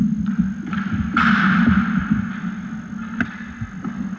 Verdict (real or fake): real